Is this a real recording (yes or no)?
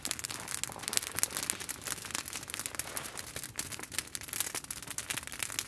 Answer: yes